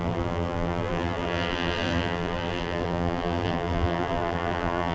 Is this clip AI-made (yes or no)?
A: yes